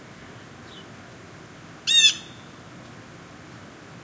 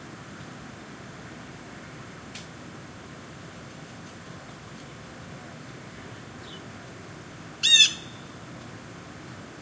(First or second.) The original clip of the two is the first